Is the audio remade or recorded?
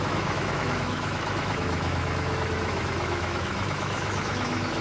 remade